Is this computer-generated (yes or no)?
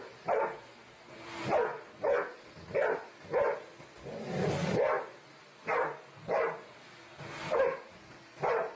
no